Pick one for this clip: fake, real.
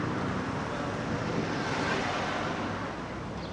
real